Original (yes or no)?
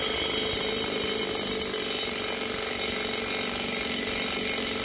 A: yes